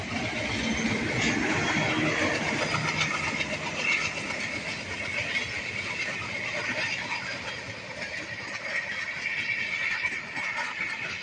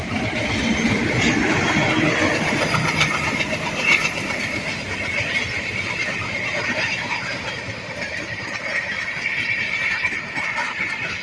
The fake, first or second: second